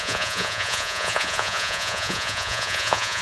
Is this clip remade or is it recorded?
remade